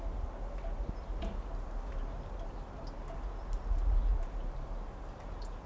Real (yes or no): yes